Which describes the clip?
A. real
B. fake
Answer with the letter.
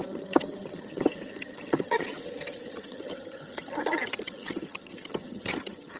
B